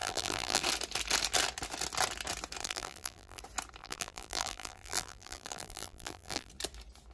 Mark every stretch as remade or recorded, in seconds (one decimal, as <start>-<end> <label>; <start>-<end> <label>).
0.0-0.6 remade; 0.6-2.6 recorded; 2.6-3.4 remade; 3.4-3.8 recorded; 3.8-6.5 remade; 6.5-7.1 recorded